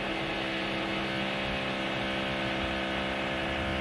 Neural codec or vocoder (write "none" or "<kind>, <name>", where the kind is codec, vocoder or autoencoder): none